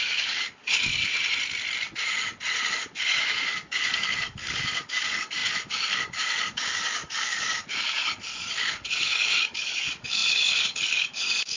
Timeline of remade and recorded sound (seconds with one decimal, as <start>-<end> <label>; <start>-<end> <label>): 0.0-1.1 remade; 1.1-2.7 recorded; 2.7-11.6 remade